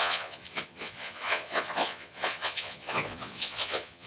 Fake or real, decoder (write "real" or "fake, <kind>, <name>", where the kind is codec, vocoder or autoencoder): fake, vocoder, Vocos